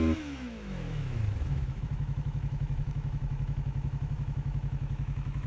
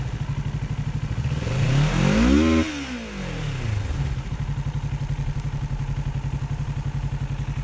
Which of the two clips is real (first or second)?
second